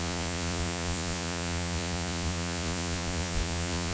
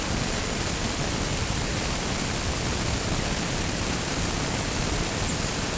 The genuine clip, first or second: second